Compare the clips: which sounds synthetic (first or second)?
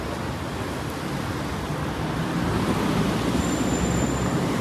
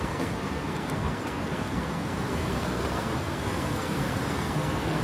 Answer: second